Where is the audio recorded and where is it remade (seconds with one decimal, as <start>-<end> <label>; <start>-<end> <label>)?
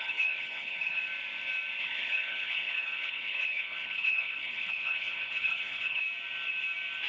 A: 0.0-1.0 remade; 1.0-1.8 recorded; 1.8-6.0 remade; 6.0-7.1 recorded